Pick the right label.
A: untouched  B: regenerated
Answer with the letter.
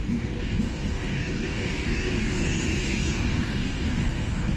B